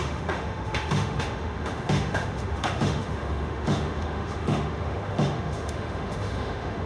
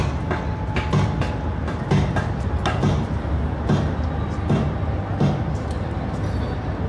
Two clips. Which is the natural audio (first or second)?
second